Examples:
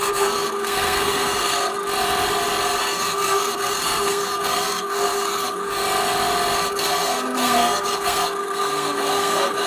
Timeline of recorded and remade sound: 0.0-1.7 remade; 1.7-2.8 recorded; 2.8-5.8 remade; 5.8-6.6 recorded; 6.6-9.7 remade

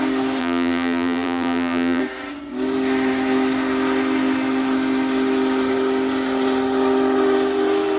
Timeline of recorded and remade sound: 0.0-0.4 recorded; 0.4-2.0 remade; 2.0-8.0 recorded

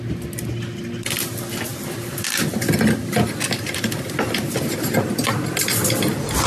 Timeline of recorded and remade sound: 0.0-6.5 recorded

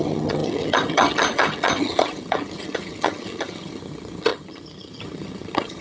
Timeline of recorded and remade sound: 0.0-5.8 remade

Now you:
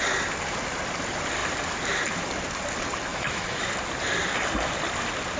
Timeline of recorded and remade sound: 0.0-3.1 recorded; 3.1-3.7 remade; 3.7-5.4 recorded